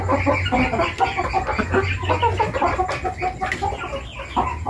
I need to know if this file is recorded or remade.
recorded